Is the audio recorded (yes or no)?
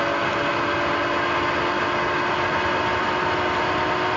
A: yes